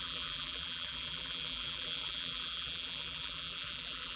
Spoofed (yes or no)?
yes